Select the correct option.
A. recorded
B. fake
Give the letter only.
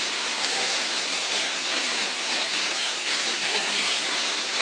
B